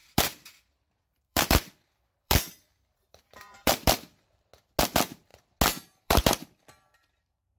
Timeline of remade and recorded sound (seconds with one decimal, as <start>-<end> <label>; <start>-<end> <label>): 0.0-4.1 remade; 4.1-4.8 recorded; 4.8-5.3 remade; 5.3-6.0 recorded; 6.0-7.6 remade